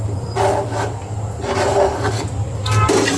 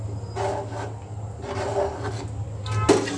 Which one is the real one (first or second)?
second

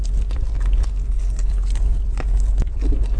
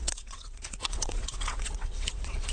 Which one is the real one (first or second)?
first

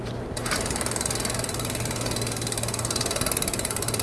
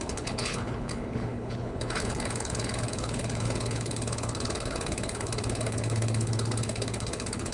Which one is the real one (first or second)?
first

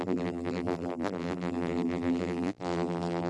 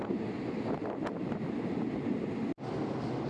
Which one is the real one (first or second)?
second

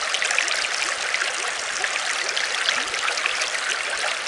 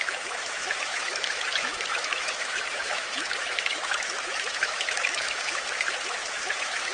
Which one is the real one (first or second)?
first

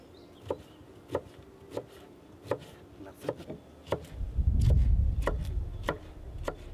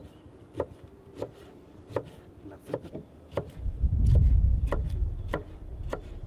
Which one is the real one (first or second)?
first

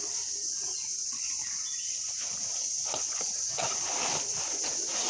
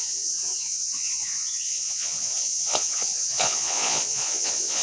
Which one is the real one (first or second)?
first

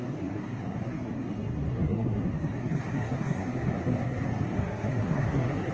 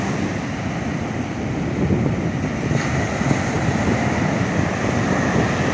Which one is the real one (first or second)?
second